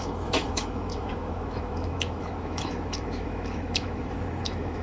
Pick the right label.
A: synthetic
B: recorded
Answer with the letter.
A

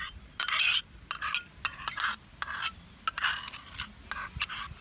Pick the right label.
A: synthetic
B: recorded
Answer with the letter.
B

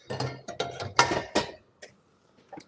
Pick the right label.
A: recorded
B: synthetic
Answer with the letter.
A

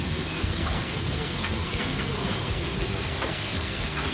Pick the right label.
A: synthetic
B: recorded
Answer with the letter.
A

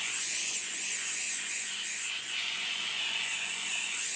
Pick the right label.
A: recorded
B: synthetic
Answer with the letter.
B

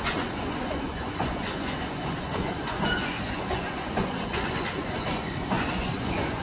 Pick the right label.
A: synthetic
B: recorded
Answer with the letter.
A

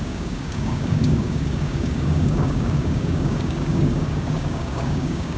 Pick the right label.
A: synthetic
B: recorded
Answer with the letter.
A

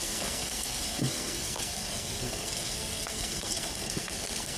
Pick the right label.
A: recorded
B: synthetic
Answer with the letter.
B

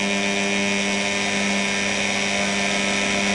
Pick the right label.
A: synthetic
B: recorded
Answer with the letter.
B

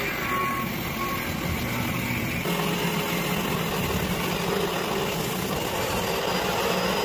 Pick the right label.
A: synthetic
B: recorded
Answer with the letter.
B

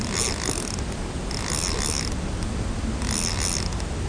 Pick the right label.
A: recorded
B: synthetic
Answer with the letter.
A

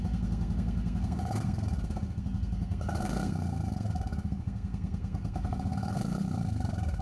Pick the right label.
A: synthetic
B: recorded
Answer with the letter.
A